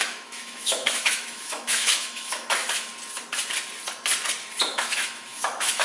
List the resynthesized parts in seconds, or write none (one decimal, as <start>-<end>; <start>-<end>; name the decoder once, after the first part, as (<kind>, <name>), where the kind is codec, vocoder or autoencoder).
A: 0.0-2.9 (autoencoder, DAC-VAE); 4.7-5.8